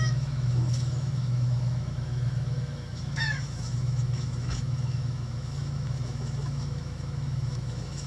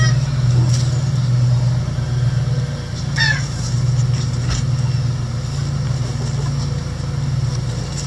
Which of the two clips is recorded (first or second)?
second